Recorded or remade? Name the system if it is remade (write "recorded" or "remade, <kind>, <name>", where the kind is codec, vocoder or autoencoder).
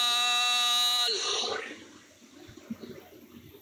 recorded